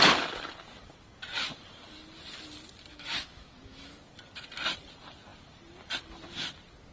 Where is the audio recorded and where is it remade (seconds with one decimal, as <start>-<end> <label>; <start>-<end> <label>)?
0.0-2.9 recorded; 2.9-4.0 remade; 4.0-6.9 recorded